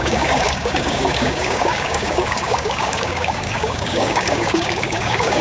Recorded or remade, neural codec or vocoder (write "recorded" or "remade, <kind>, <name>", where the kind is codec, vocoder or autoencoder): remade, codec, DAC